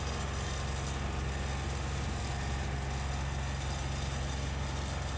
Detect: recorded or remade recorded